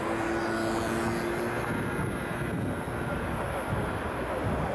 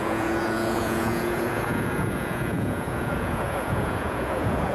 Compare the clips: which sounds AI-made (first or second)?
second